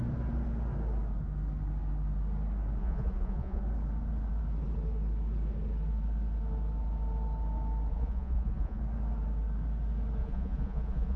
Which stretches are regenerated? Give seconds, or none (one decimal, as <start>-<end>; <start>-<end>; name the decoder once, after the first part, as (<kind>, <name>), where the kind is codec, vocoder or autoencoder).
2.8-3.6 (vocoder, Vocos); 7.9-8.8; 10.2-11.2